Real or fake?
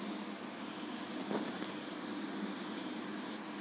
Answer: real